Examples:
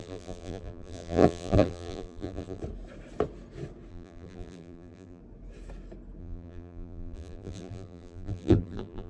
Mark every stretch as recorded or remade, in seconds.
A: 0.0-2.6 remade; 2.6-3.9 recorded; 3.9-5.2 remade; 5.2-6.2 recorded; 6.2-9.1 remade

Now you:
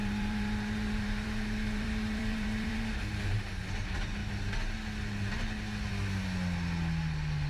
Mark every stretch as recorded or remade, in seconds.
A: 0.0-3.5 remade; 3.5-7.5 recorded